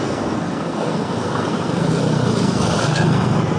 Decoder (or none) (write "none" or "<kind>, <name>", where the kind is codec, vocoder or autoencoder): codec, SNAC